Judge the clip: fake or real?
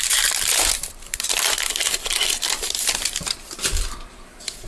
fake